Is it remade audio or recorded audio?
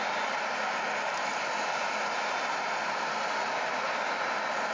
recorded